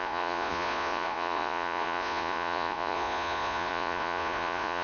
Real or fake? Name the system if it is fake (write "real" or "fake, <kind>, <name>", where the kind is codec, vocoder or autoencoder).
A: fake, vocoder, Vocos